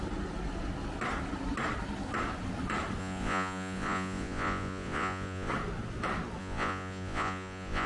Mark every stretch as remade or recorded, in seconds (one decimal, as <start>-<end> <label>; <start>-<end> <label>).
0.0-3.0 recorded; 3.0-5.5 remade; 5.5-6.4 recorded; 6.4-7.9 remade